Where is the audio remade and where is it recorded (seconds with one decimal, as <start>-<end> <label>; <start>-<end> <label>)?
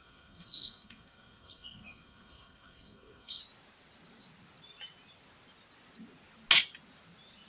0.0-3.4 remade; 3.4-7.5 recorded